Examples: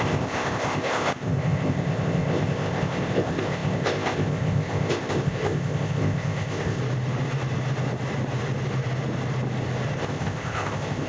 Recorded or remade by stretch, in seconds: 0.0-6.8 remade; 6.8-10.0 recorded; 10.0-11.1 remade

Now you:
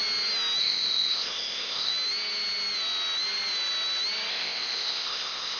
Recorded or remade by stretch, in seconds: 0.0-0.6 recorded; 0.6-1.9 remade; 1.9-4.3 recorded; 4.3-5.6 remade